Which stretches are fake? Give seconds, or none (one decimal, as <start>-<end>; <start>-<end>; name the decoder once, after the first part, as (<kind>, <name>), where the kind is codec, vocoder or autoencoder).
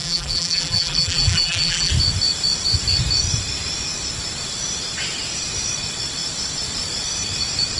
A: 0.0-1.9 (vocoder, BigVGAN v2)